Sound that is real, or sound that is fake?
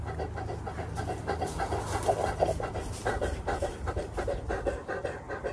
real